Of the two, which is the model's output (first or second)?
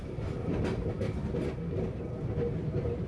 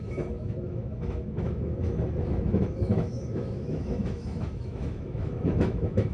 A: second